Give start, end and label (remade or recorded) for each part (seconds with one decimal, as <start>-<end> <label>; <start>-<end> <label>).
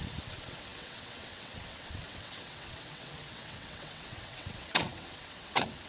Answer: 0.0-5.9 remade